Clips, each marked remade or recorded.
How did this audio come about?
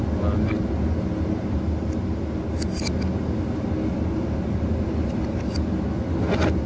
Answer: recorded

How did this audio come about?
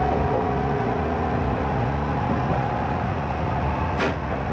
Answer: remade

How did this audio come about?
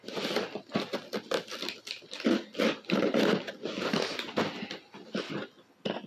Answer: recorded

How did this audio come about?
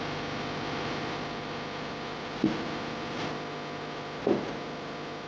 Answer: recorded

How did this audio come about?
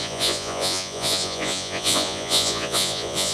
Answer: remade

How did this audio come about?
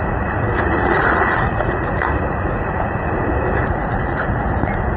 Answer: remade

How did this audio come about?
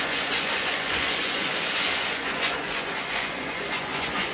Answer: remade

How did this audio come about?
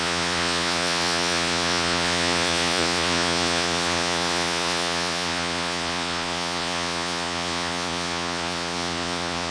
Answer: remade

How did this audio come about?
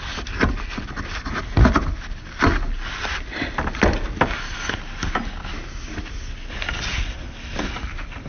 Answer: recorded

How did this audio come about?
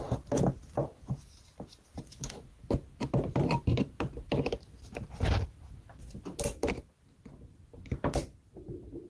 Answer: recorded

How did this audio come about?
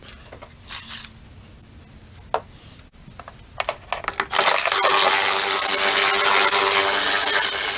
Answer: recorded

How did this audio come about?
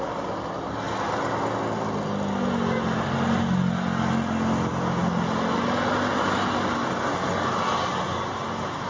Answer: recorded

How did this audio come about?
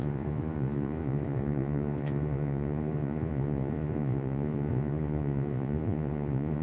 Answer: remade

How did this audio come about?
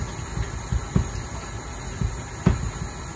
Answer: recorded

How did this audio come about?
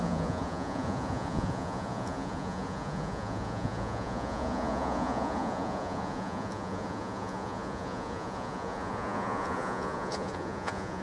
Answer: remade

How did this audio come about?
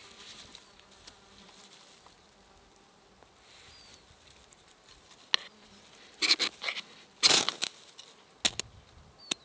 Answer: recorded